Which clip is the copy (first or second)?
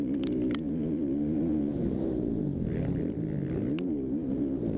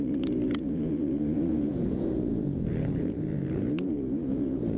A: second